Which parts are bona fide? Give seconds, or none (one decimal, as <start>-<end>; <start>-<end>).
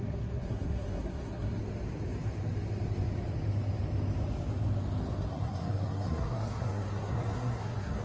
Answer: 1.6-5.3